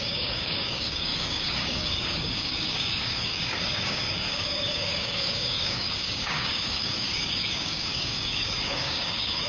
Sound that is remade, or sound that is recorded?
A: remade